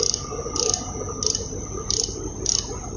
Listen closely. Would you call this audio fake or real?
real